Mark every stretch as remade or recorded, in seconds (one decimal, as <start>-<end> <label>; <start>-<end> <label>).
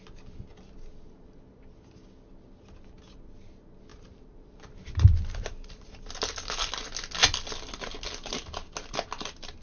0.0-3.9 recorded; 3.9-6.1 remade; 6.1-9.6 recorded